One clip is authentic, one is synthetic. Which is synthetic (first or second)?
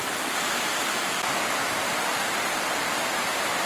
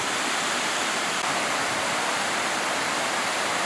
second